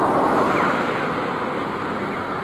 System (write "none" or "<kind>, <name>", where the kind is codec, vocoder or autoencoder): none